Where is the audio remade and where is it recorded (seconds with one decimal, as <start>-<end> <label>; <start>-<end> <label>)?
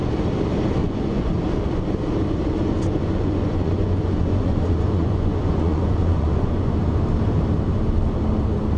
0.0-0.8 recorded; 0.8-1.3 remade; 1.3-2.7 recorded; 2.7-6.7 remade; 6.7-8.8 recorded